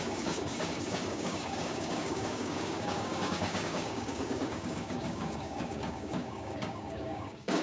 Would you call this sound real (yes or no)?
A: no